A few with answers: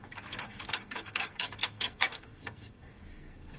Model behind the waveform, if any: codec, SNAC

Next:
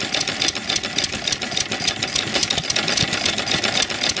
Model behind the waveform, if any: none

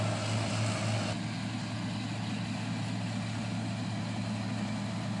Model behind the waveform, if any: none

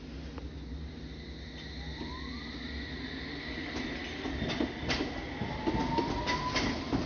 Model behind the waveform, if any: none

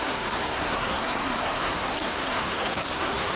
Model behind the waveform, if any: codec, SNAC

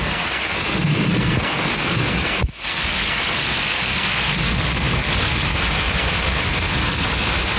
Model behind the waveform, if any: codec, SNAC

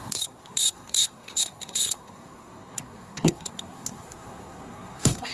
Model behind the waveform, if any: codec, SNAC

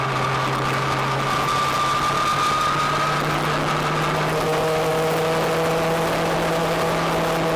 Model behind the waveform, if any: none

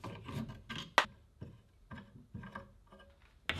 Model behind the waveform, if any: none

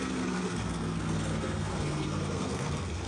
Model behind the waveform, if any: codec, SNAC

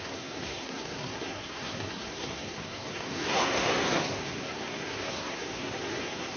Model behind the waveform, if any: codec, SNAC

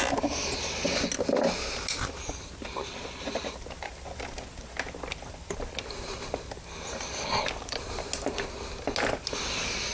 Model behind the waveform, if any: none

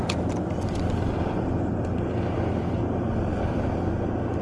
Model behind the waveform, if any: none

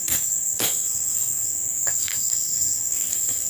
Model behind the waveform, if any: codec, SNAC